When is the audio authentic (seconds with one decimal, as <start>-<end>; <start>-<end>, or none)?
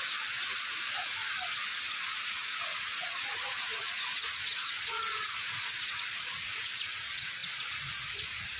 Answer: 1.2-1.9